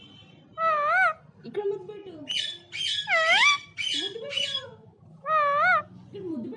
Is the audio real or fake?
real